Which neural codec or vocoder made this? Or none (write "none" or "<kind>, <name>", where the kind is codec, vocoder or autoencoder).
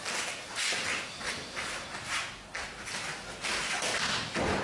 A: none